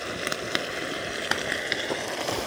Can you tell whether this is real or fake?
real